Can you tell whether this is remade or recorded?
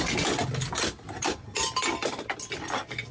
recorded